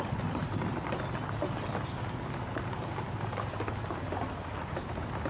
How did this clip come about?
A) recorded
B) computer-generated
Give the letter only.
A